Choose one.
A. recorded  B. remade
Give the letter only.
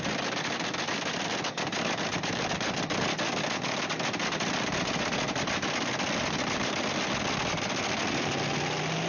A